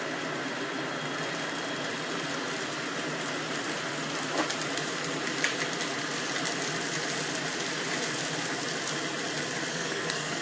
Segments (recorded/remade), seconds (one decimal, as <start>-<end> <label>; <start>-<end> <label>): 0.0-9.7 recorded; 9.7-10.4 remade

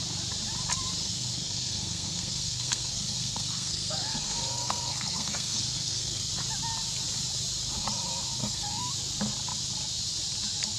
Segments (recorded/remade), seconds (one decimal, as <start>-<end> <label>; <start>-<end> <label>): 0.0-1.0 recorded; 1.0-6.3 remade; 6.3-8.4 recorded; 8.4-8.9 remade; 8.9-10.8 recorded

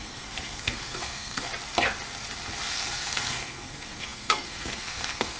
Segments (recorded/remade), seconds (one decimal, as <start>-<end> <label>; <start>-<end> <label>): 0.0-1.5 remade; 1.5-2.7 recorded; 2.7-5.4 remade

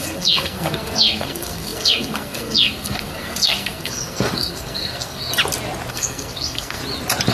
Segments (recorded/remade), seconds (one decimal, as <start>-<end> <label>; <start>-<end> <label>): 0.0-5.3 remade; 5.3-5.9 recorded; 5.9-6.8 remade; 6.8-7.3 recorded

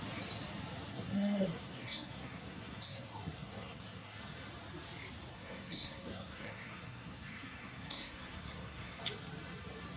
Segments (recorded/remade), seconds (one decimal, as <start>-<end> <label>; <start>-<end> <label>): 0.0-0.9 recorded; 0.9-4.2 remade; 4.2-5.3 recorded; 5.3-9.0 remade; 9.0-10.0 recorded

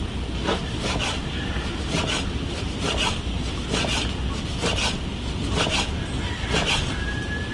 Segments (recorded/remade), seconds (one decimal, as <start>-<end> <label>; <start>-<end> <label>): 0.0-7.5 recorded

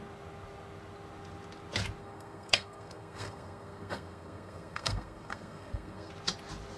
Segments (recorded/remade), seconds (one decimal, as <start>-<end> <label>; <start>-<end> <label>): 0.0-2.0 recorded; 2.0-6.1 remade; 6.1-6.8 recorded